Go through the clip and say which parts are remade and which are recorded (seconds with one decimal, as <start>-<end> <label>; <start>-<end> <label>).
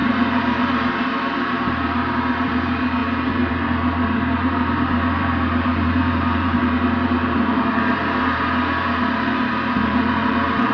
0.0-10.7 remade